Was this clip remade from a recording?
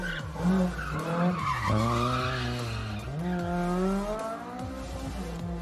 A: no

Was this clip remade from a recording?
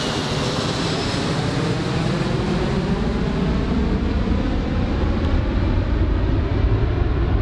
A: no